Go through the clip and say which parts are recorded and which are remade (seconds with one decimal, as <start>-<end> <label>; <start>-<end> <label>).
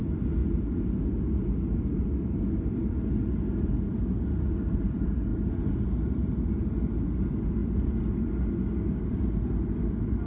0.0-10.3 recorded